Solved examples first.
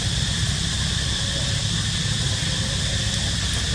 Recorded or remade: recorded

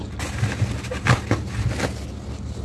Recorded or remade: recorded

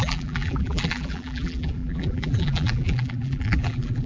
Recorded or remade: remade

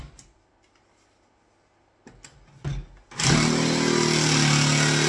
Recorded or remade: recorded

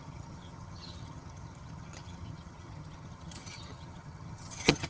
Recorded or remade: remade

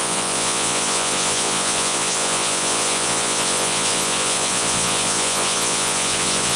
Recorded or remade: remade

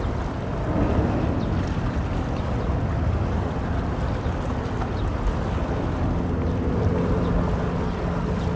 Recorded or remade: recorded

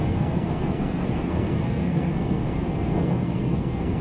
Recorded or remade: remade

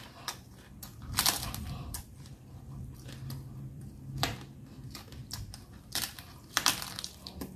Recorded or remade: remade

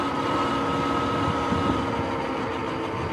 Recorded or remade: recorded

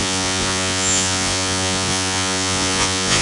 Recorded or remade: remade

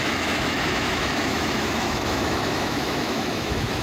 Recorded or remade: remade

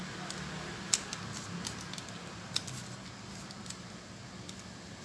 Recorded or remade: recorded